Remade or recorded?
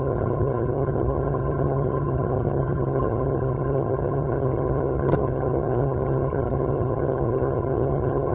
remade